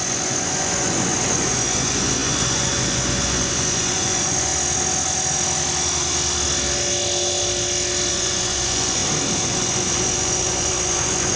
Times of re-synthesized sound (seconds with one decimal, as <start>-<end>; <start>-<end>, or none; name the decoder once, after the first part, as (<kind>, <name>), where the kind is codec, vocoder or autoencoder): 0.0-4.5 (vocoder, Vocos); 8.1-9.0; 9.5-11.4